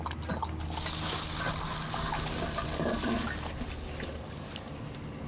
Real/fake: real